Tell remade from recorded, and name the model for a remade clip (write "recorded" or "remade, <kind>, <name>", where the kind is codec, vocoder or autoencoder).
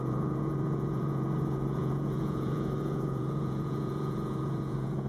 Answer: remade, vocoder, Vocos